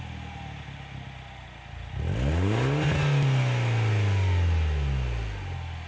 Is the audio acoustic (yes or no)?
yes